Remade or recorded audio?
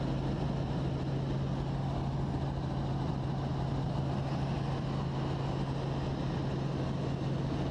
recorded